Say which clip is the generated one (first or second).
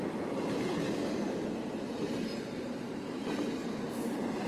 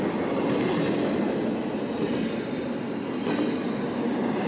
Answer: first